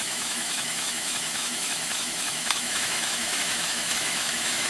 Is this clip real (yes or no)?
no